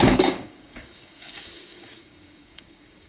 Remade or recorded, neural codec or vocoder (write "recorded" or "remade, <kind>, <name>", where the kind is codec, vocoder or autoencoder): remade, codec, DAC